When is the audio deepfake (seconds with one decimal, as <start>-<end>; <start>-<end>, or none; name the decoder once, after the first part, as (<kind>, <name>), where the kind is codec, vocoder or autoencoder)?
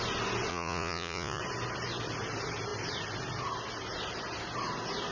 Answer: 0.5-1.4 (vocoder, Vocos)